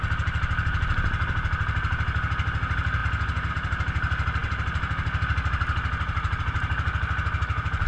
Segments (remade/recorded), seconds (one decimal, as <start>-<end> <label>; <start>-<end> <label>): 0.0-7.9 recorded